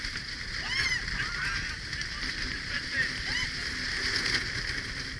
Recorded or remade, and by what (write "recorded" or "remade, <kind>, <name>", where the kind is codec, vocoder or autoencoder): recorded